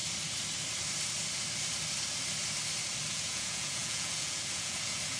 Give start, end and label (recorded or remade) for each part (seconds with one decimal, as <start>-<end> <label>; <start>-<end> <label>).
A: 0.0-3.1 recorded; 3.1-5.2 remade